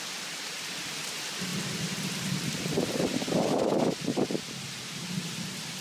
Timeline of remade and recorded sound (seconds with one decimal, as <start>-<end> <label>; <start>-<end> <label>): 0.0-1.5 recorded; 1.5-2.6 remade; 2.6-4.1 recorded; 4.1-4.6 remade; 4.6-5.8 recorded